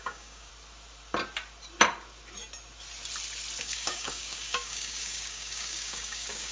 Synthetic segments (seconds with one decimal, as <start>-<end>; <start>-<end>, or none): 0.0-0.5; 3.6-6.5